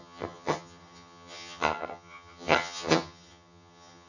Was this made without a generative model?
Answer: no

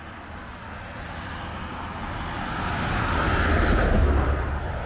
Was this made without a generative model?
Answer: yes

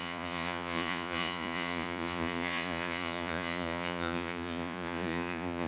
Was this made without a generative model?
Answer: no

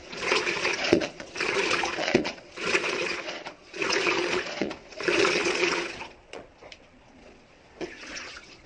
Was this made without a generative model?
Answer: no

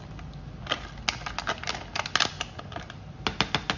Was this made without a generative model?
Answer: yes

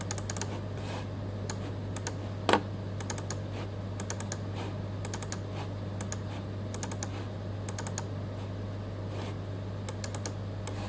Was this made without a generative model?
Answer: yes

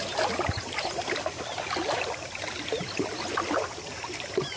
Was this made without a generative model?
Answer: yes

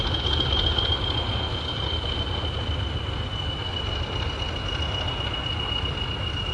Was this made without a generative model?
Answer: yes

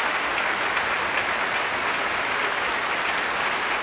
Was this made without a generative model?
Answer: yes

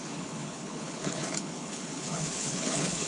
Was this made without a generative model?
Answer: no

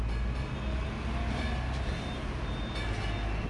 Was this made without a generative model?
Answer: yes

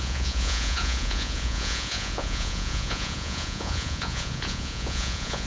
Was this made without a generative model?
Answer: no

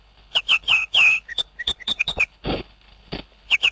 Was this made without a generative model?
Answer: no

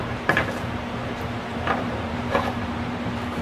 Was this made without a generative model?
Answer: no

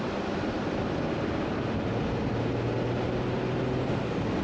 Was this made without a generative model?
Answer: yes